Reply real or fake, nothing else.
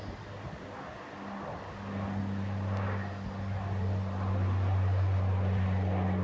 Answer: real